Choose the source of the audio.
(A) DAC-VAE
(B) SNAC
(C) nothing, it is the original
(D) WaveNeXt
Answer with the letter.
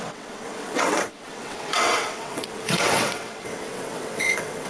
D